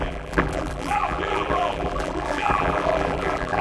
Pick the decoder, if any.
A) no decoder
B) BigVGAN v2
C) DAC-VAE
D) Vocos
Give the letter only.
B